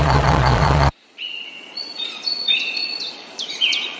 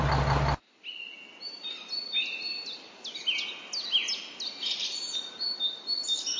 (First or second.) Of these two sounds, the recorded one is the second